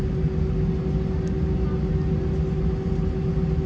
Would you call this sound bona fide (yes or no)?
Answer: yes